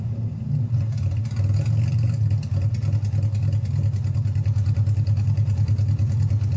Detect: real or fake real